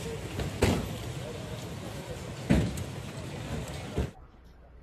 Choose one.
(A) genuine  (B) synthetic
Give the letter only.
A